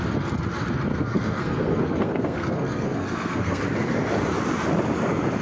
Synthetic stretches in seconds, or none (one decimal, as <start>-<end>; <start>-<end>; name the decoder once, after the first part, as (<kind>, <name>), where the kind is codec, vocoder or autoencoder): 0.9-3.6 (codec, SNAC)